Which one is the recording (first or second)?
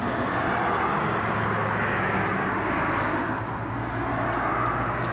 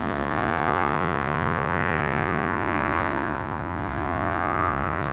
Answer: first